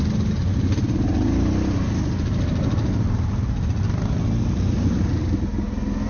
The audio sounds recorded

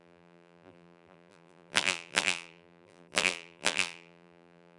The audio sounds remade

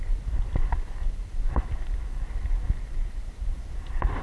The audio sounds remade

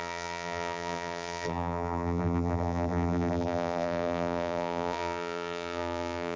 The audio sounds remade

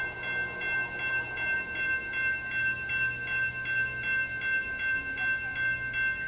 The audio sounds recorded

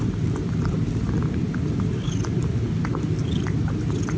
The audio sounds recorded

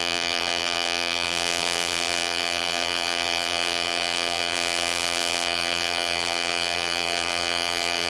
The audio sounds remade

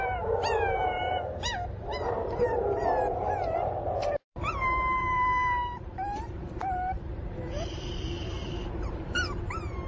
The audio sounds remade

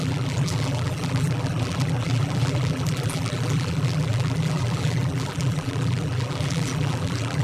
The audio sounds remade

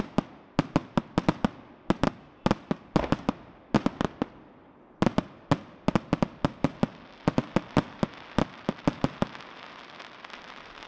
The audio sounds recorded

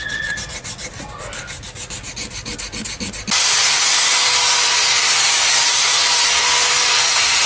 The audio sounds recorded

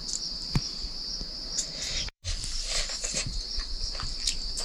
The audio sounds remade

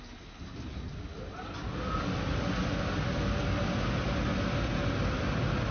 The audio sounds recorded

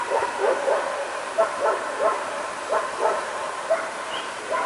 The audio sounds remade